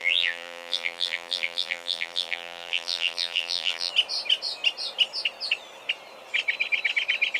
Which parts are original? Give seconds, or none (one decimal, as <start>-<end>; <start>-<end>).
3.9-7.4